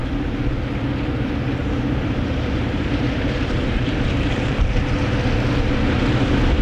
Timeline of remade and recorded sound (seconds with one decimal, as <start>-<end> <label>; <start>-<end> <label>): 0.0-1.6 recorded; 1.6-5.0 remade; 5.0-6.6 recorded